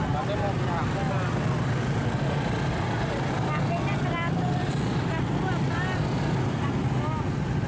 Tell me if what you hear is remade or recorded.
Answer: recorded